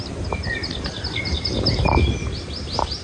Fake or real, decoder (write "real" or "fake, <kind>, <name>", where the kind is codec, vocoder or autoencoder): real